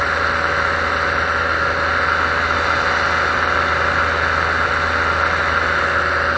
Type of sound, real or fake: real